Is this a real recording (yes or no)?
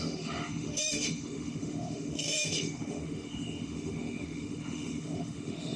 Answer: no